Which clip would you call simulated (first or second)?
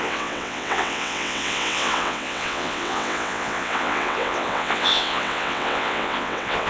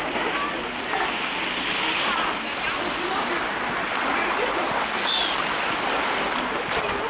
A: first